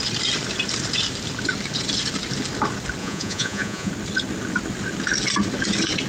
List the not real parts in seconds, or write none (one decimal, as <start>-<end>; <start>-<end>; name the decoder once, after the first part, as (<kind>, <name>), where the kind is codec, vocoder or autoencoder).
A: 3.0-3.9 (vocoder, Vocos)

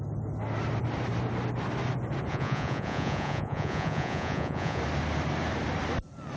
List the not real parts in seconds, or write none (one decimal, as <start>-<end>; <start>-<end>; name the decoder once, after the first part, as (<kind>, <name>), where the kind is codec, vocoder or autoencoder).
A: 2.3-4.8 (vocoder, Vocos)

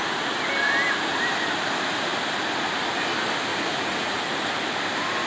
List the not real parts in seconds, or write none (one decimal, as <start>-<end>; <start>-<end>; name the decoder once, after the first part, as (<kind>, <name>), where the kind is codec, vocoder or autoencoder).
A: 3.5-4.2 (vocoder, Vocos)

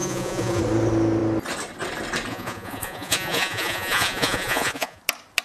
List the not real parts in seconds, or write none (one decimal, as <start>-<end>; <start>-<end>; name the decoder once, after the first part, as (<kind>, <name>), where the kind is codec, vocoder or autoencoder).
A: 0.0-0.6 (vocoder, Vocos); 2.3-5.0

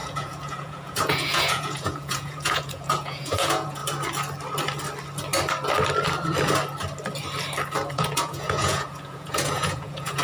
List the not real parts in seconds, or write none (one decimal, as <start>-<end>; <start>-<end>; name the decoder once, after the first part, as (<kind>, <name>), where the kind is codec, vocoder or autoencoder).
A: 0.0-3.8 (vocoder, Vocos); 7.9-10.2

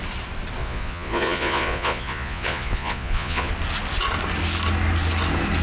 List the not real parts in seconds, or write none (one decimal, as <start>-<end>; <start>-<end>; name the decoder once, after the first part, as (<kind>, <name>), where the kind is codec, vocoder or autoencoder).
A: 0.6-3.5 (vocoder, Vocos)

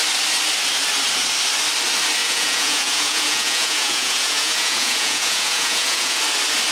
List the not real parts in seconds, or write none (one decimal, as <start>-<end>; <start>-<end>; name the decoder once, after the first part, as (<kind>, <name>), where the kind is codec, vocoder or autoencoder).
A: 2.2-6.2 (vocoder, Vocos)

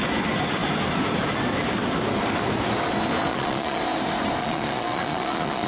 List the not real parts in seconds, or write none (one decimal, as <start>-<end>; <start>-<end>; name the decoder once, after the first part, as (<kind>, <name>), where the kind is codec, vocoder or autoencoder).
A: 3.3-3.8 (vocoder, Vocos); 4.4-5.7